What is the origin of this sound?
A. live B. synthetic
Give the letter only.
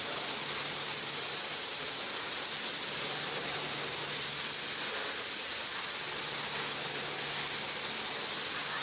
A